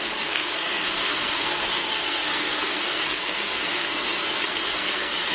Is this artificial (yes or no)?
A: yes